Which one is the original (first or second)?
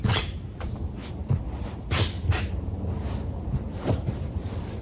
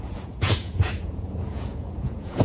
first